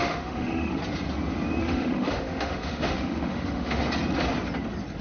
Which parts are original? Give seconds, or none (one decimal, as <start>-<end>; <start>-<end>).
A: 0.8-1.6; 3.8-5.0